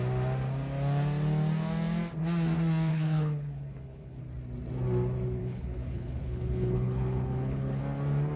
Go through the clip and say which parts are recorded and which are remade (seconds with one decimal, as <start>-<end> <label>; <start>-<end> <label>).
0.0-2.9 recorded; 2.9-4.2 remade; 4.2-5.4 recorded; 5.4-7.8 remade; 7.8-8.4 recorded